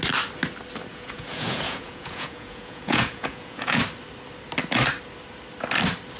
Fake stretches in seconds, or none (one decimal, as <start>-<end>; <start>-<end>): 0.9-3.8